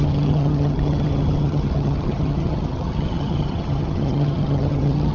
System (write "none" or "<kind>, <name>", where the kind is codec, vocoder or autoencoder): vocoder, HiFi-GAN